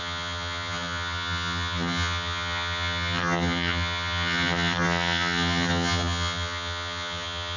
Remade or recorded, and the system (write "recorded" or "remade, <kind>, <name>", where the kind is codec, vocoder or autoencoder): remade, vocoder, HiFi-GAN